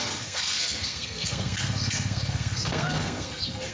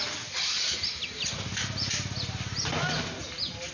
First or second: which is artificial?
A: first